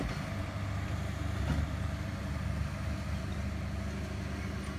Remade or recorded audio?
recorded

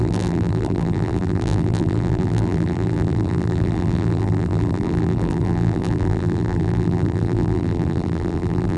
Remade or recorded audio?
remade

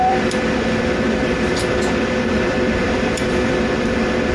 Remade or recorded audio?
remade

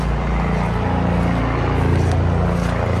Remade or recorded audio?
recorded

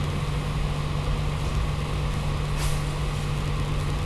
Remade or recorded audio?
recorded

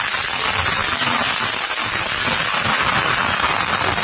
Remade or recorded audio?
recorded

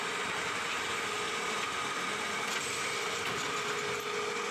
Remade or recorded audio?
recorded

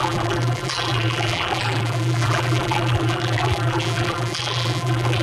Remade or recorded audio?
remade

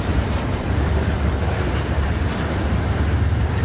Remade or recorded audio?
remade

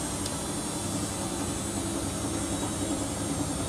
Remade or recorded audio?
remade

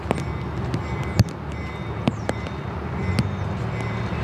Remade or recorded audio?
recorded